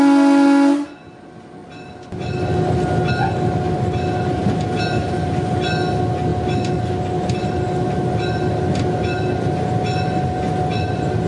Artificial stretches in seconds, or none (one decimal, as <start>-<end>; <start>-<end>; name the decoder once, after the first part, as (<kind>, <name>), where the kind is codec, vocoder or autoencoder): none